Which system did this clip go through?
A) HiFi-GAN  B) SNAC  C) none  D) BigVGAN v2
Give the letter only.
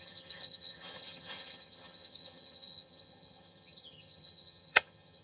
A